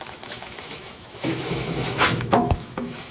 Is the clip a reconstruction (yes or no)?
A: yes